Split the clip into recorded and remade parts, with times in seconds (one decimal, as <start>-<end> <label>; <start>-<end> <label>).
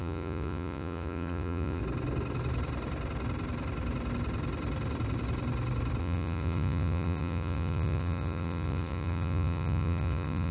0.0-1.8 remade; 1.8-6.0 recorded; 6.0-10.5 remade